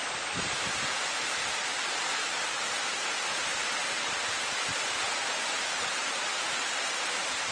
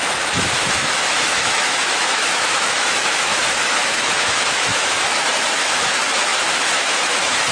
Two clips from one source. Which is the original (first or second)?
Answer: first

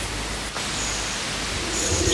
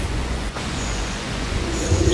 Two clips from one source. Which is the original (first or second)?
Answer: first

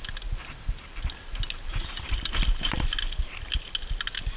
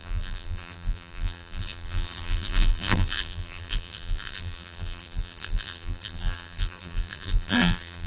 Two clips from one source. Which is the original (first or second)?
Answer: first